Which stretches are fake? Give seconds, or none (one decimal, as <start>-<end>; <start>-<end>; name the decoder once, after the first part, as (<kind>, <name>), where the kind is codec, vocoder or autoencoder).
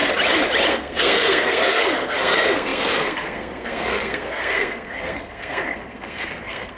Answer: 0.7-6.8 (codec, SNAC)